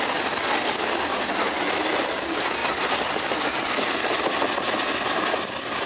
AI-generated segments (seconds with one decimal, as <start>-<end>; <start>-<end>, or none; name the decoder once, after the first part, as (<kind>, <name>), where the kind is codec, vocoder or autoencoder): none